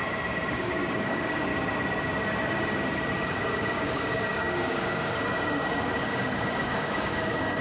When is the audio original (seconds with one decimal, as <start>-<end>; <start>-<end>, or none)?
0.0-0.5; 1.5-3.2

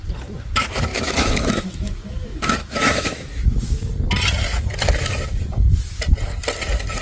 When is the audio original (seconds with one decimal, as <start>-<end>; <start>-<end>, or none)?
0.0-0.9; 3.9-7.0

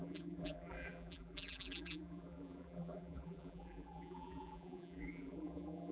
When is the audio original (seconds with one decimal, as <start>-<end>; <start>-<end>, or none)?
none